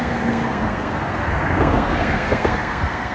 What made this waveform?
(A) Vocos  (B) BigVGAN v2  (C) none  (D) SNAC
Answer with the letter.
D